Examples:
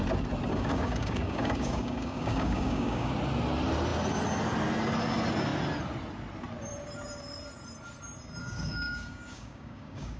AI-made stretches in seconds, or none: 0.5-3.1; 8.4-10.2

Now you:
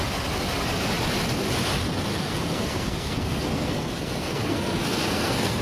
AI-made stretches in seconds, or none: 2.1-5.6